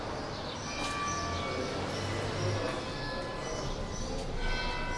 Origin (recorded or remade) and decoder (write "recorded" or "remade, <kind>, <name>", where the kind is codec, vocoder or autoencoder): recorded